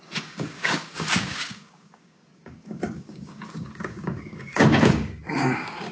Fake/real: fake